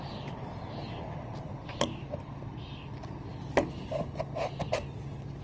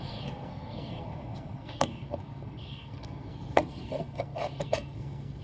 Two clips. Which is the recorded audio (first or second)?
first